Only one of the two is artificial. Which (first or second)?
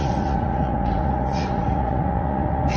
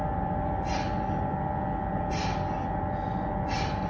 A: first